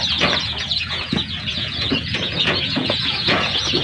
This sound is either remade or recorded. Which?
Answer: remade